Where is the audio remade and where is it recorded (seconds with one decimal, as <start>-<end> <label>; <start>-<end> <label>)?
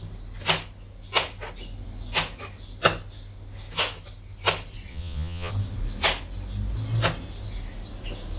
0.0-4.9 recorded; 4.9-5.5 remade; 5.5-8.4 recorded